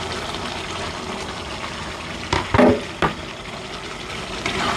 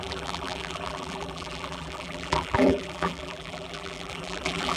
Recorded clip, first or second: first